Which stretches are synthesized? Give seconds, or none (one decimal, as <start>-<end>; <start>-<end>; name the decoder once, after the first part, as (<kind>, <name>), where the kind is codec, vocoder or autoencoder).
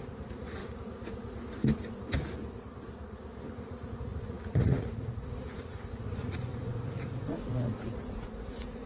0.0-0.6 (vocoder, Vocos); 3.5-8.9